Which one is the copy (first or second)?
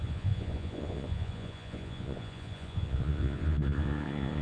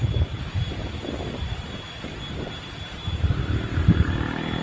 first